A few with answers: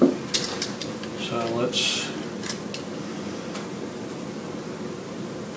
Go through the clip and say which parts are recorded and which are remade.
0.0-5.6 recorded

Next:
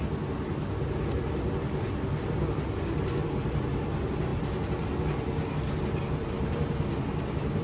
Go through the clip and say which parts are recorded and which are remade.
0.0-7.6 recorded

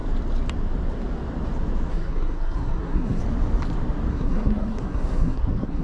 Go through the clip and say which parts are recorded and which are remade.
0.0-1.9 recorded; 1.9-3.2 remade; 3.2-4.1 recorded; 4.1-5.8 remade

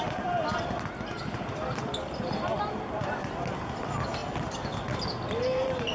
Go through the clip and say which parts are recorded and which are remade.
0.0-5.9 recorded

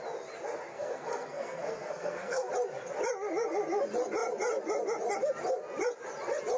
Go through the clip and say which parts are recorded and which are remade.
0.0-0.7 recorded; 0.7-2.5 remade; 2.5-6.6 recorded

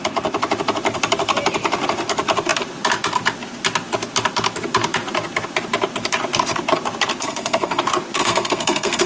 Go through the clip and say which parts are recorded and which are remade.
0.0-7.2 recorded; 7.2-7.8 remade; 7.8-8.2 recorded; 8.2-9.1 remade

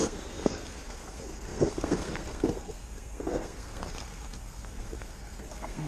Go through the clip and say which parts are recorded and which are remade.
0.0-5.9 remade

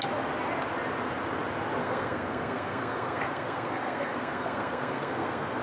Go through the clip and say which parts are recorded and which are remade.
0.0-1.8 recorded; 1.8-5.6 remade